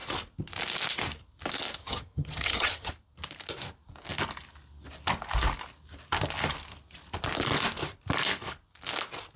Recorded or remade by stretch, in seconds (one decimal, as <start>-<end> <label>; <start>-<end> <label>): 0.0-1.8 recorded; 1.8-2.9 remade; 2.9-9.4 recorded